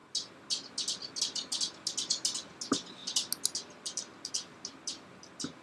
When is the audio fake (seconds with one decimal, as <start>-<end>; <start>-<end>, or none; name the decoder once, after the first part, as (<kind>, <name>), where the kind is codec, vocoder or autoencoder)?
none